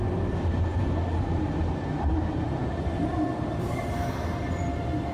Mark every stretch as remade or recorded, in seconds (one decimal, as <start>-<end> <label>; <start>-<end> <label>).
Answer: 0.0-5.1 recorded